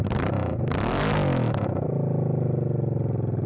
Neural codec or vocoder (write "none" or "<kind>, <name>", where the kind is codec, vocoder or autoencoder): none